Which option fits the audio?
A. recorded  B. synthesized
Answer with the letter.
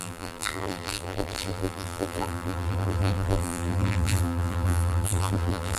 B